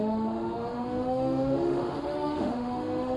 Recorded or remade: remade